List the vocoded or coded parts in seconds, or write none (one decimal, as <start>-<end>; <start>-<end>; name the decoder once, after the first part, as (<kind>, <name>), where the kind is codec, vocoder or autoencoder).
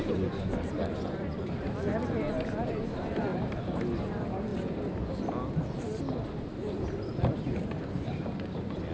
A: 0.0-4.5 (vocoder, BigVGAN v2); 6.0-8.9